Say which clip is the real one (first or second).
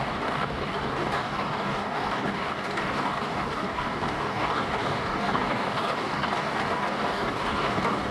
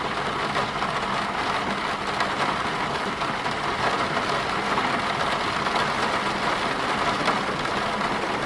second